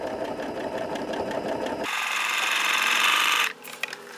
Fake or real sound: fake